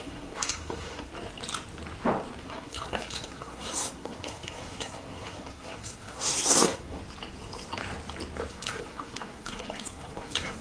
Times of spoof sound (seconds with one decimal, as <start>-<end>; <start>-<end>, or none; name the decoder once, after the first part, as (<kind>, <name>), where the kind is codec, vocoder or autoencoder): 0.0-1.1 (codec, SNAC); 2.4-7.0; 8.5-10.6